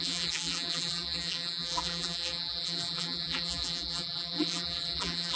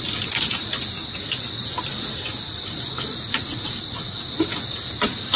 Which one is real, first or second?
second